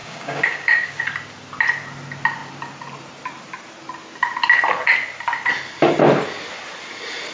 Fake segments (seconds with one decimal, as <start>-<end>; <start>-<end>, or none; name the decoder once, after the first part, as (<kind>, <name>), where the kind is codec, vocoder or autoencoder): 0.0-1.0 (codec, DAC)